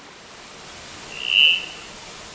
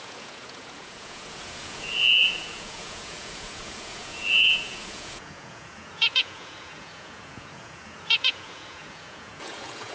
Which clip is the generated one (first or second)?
second